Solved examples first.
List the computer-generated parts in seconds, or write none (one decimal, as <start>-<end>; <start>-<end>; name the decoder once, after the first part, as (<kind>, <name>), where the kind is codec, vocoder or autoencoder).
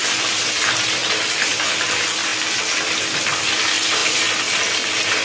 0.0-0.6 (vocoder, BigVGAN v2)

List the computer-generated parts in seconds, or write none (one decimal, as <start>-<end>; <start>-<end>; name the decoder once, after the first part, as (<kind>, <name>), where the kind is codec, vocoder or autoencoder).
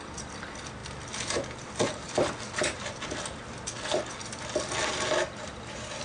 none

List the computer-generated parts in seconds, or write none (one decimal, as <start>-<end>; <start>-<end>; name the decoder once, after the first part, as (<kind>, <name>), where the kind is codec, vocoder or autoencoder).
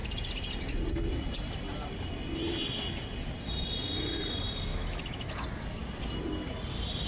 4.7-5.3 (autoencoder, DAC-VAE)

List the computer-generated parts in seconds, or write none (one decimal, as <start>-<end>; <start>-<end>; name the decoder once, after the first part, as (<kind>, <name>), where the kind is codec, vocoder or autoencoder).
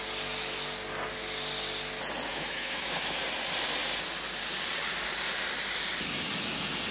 2.3-3.2 (autoencoder, DAC-VAE)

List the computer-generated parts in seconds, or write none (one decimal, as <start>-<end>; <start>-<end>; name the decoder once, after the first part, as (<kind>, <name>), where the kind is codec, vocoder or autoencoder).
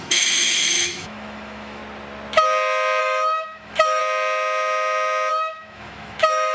0.0-1.8 (autoencoder, DAC-VAE); 3.0-4.0; 5.3-6.5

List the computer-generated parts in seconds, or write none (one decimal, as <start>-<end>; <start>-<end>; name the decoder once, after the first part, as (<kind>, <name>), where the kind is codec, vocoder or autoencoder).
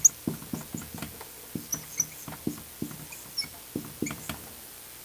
none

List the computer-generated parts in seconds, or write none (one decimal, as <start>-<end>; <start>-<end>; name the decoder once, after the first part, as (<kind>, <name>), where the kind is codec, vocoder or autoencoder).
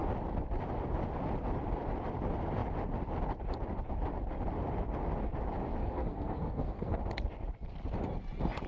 5.8-7.0 (codec, SNAC)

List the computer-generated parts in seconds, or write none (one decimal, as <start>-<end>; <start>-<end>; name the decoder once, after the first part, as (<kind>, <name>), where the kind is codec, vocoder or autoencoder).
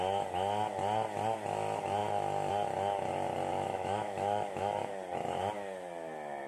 3.5-4.9 (autoencoder, DAC-VAE)